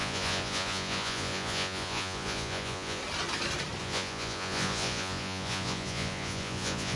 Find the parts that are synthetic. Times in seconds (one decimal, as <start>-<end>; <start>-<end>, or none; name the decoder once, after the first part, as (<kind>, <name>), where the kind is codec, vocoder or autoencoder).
0.0-3.0 (vocoder, Vocos); 3.8-7.0